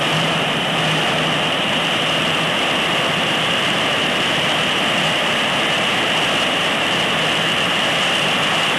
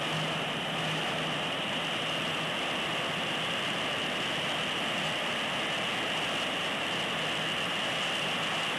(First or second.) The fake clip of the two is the first